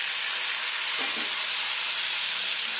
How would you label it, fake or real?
real